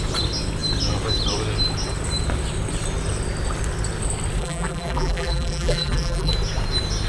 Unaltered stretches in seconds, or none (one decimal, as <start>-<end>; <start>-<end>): 0.0-4.4; 6.3-7.1